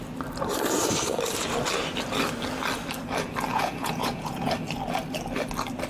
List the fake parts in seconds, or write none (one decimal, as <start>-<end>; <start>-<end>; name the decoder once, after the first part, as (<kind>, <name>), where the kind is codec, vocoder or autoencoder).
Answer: 3.5-4.5 (vocoder, Vocos)